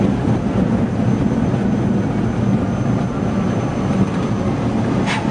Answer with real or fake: real